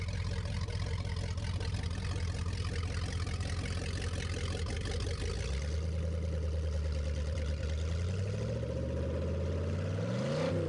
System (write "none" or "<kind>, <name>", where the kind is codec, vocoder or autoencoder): none